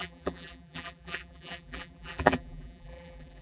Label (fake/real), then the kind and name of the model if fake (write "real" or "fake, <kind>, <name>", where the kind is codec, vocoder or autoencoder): fake, vocoder, BigVGAN v2